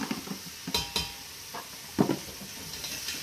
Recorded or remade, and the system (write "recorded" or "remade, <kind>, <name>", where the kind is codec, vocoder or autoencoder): recorded